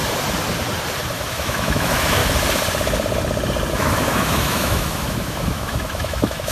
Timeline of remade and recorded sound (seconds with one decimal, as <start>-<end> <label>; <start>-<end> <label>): 0.0-1.3 recorded; 1.3-2.2 remade; 2.2-3.7 recorded; 3.7-6.5 remade

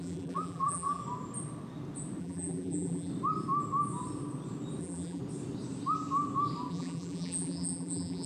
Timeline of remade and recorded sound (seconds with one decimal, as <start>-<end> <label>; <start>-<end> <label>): 0.0-1.0 remade; 1.0-2.2 recorded; 2.2-3.1 remade; 3.1-4.8 recorded; 4.8-5.2 remade; 5.2-6.7 recorded; 6.7-8.3 remade

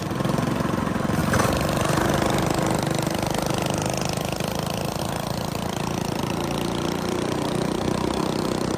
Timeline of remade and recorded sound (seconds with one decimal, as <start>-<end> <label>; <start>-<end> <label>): 0.0-6.2 recorded; 6.2-8.2 remade; 8.2-8.8 recorded

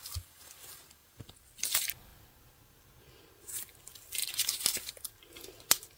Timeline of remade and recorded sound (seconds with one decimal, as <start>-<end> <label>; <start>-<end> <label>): 0.0-6.0 recorded

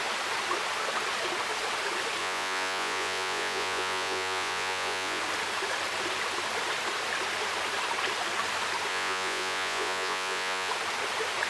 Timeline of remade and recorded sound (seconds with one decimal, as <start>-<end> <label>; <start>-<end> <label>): 0.0-2.2 recorded; 2.2-5.2 remade; 5.2-8.9 recorded; 8.9-10.7 remade; 10.7-11.5 recorded

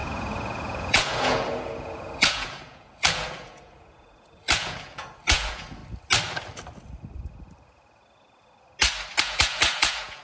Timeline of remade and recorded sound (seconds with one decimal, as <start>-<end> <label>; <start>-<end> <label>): 0.0-5.8 remade; 5.8-9.2 recorded; 9.2-10.2 remade

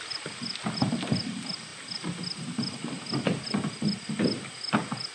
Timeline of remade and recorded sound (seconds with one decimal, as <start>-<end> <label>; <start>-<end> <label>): 0.0-5.1 recorded